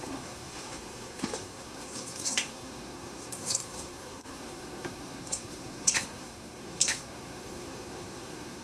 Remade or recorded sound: remade